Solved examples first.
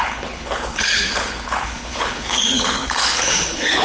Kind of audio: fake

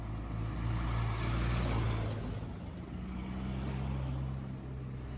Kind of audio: real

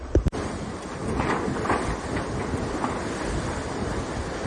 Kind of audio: real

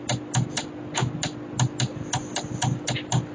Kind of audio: real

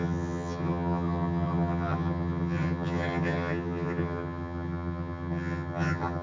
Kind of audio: fake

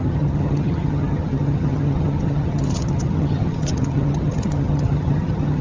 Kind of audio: fake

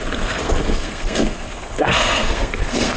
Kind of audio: fake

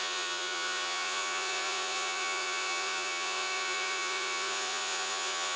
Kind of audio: fake